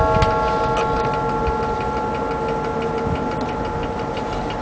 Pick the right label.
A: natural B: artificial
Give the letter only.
A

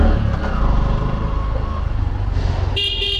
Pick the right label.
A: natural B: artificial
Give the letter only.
A